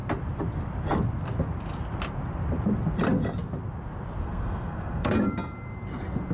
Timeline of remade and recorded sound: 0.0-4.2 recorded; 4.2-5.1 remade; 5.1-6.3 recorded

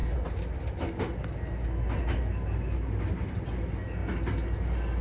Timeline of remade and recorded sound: 0.0-5.0 recorded

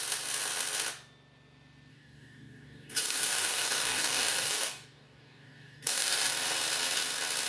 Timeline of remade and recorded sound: 0.0-1.9 recorded; 1.9-6.3 remade; 6.3-7.5 recorded

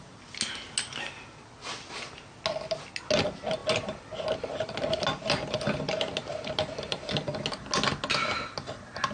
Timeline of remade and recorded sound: 0.0-9.1 recorded

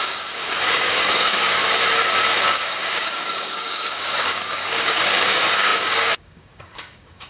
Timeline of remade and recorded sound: 0.0-1.6 remade; 1.6-2.5 recorded; 2.5-7.3 remade

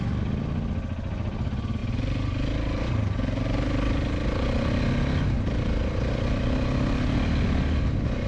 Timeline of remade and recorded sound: 0.0-8.3 recorded

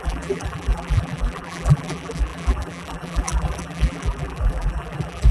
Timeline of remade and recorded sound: 0.0-5.3 remade

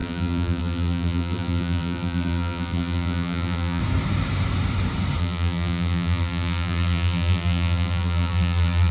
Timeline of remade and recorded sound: 0.0-3.8 remade; 3.8-5.2 recorded; 5.2-8.9 remade